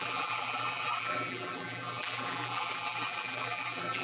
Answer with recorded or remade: remade